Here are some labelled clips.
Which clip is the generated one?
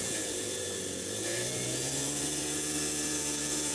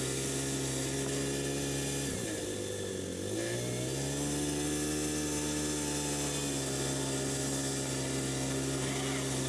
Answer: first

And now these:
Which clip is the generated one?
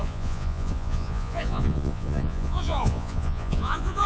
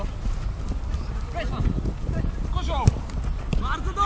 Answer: first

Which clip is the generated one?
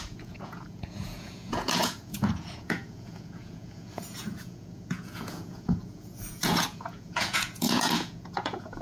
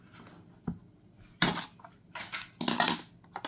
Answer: first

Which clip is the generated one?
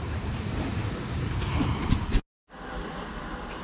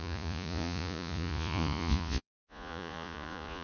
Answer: second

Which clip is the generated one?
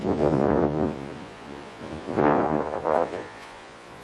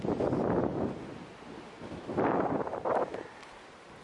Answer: first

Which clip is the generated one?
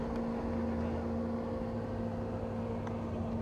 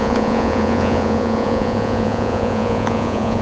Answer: second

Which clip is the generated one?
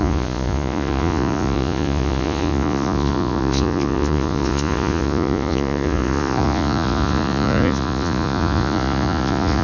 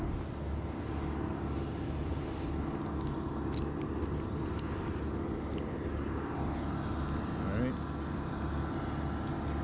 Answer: first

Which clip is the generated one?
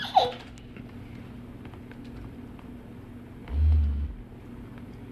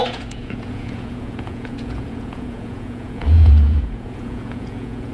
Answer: second